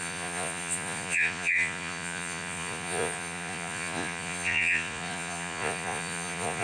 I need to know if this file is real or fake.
fake